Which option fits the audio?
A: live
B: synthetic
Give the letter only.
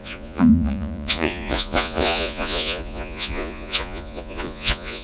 B